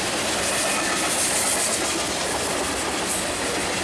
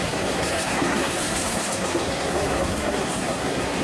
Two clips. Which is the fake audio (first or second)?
second